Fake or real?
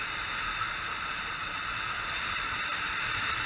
fake